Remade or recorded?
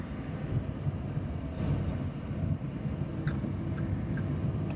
recorded